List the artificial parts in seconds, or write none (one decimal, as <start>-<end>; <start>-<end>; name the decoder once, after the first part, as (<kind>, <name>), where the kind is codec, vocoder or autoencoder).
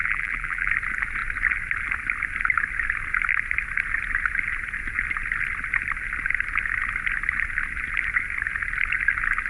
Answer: 0.0-0.7 (vocoder, BigVGAN v2)